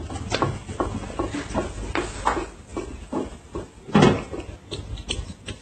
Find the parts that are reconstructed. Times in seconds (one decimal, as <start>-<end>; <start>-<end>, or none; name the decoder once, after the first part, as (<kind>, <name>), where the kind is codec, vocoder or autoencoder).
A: none